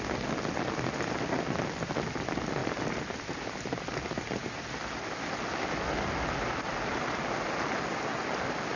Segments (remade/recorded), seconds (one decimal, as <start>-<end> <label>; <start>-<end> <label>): 0.0-2.6 recorded; 2.6-3.7 remade; 3.7-8.8 recorded